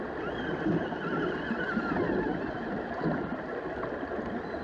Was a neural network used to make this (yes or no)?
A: no